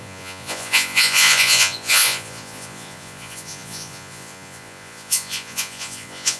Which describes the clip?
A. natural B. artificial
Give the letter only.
B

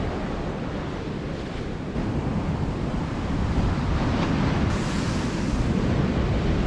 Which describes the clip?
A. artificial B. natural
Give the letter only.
B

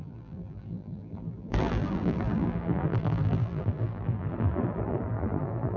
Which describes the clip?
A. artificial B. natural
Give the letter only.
A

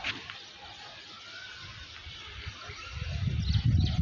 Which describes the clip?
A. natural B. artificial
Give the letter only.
A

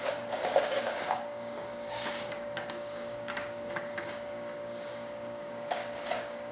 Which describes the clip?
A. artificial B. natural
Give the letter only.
A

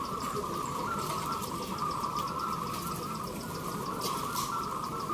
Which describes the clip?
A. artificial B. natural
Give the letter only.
B